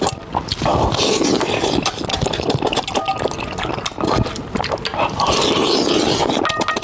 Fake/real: real